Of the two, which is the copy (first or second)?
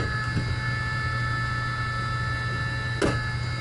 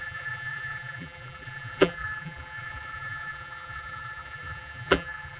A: second